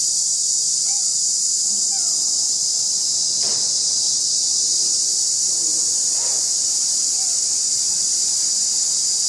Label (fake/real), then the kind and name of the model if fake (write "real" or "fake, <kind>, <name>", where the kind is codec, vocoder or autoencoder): fake, vocoder, BigVGAN v2